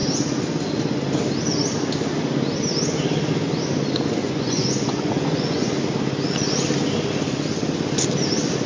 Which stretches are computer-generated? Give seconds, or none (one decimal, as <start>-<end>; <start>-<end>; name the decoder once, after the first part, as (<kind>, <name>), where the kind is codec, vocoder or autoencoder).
4.2-5.7 (vocoder, Vocos)